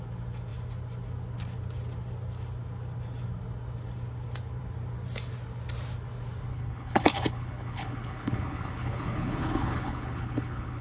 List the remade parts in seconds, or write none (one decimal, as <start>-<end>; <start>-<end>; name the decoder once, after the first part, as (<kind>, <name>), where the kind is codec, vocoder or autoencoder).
6.5-10.8 (codec, HILCodec)